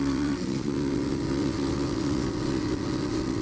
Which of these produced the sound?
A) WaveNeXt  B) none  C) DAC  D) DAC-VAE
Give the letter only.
A